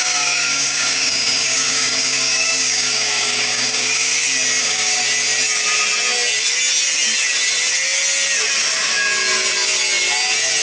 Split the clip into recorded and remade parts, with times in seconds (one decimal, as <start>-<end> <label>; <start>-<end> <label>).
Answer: 0.0-4.1 remade; 4.1-4.6 recorded; 4.6-5.0 remade; 5.0-10.6 recorded